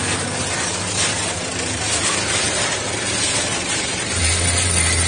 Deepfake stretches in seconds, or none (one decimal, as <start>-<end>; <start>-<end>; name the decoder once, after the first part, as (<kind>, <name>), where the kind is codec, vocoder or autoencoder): none